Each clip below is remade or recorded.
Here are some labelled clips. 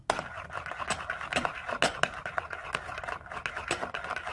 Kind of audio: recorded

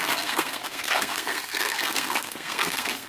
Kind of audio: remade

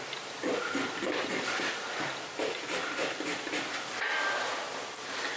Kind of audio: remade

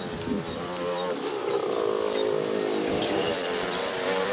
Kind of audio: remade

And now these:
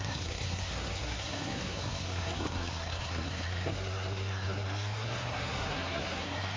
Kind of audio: remade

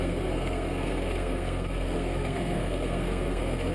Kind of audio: remade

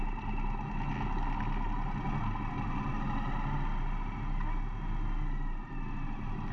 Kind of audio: recorded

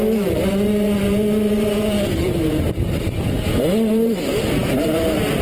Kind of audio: remade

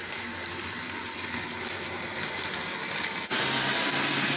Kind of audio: recorded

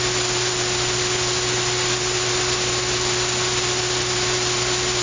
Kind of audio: recorded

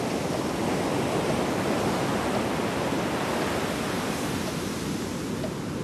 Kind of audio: recorded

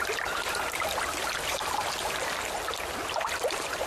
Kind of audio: recorded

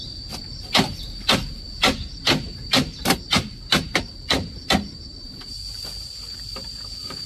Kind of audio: remade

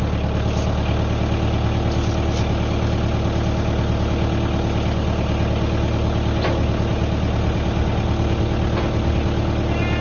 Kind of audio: recorded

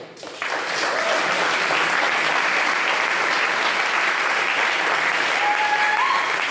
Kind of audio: recorded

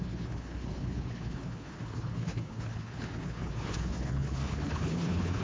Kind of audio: remade